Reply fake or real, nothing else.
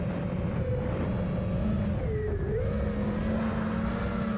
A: real